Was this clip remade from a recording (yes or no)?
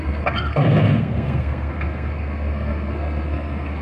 yes